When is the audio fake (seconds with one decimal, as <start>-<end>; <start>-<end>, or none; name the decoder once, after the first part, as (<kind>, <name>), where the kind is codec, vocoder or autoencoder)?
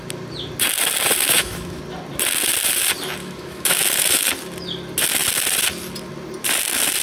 1.2-1.8 (autoencoder, DAC-VAE); 3.2-4.3